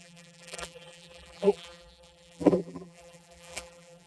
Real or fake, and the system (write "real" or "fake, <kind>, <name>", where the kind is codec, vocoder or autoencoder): fake, vocoder, BigVGAN v2